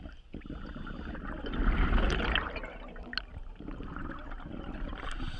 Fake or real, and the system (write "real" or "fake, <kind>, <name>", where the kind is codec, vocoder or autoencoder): real